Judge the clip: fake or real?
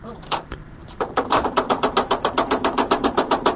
fake